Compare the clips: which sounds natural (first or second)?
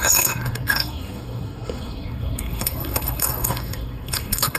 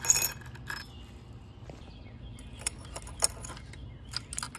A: second